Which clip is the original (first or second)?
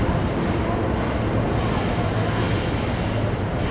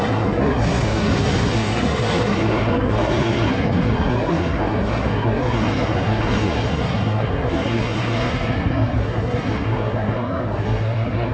first